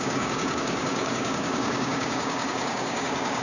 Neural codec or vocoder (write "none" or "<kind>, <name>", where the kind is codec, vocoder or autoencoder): codec, DAC